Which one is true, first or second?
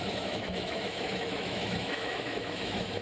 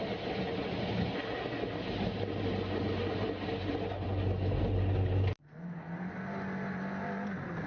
second